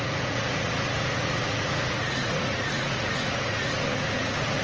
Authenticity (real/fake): fake